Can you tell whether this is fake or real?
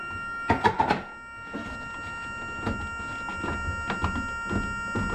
real